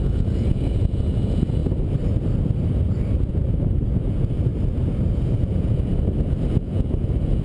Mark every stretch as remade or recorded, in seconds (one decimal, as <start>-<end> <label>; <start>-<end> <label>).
0.0-1.6 remade; 1.6-3.3 recorded; 3.3-4.5 remade; 4.5-5.1 recorded; 5.1-5.9 remade; 5.9-6.5 recorded; 6.5-7.4 remade